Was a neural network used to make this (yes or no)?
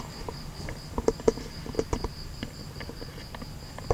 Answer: no